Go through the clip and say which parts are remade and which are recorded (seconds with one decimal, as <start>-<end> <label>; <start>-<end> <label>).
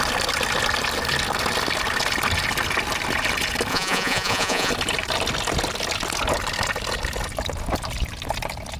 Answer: 0.0-3.7 recorded; 3.7-4.7 remade; 4.7-8.8 recorded